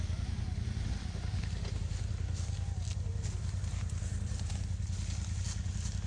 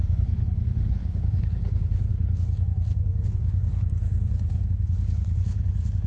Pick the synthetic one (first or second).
second